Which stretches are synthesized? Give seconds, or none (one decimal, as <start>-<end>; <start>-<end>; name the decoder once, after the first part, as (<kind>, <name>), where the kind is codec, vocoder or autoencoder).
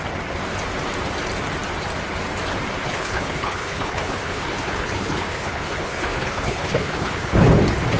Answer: 2.8-7.5 (codec, HILCodec)